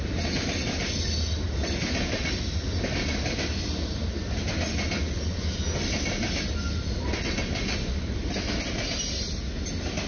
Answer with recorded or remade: recorded